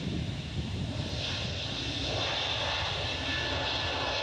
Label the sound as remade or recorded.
recorded